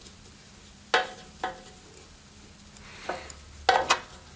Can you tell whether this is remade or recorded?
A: recorded